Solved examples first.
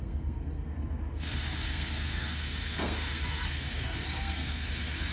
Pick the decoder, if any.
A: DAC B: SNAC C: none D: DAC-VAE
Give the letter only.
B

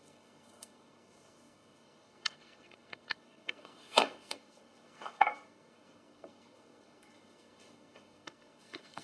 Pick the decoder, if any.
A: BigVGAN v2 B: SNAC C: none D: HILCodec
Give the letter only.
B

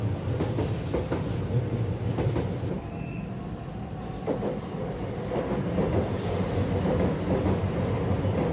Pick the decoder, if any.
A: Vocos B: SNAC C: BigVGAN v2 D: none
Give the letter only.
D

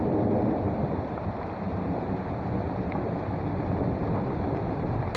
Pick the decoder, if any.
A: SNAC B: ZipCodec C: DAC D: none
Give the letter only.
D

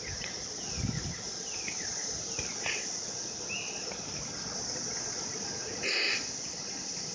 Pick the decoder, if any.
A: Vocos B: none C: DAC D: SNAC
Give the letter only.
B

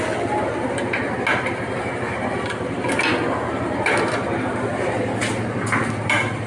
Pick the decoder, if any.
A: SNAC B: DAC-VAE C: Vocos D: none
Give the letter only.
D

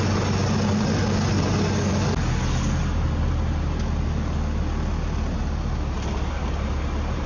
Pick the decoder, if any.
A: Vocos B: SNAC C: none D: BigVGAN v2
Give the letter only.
C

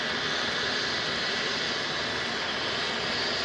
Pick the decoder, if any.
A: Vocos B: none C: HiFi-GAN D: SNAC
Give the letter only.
B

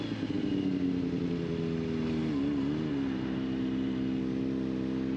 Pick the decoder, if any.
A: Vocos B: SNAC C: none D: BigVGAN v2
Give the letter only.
C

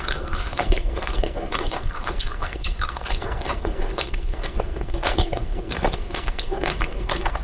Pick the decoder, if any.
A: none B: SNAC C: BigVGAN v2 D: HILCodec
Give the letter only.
B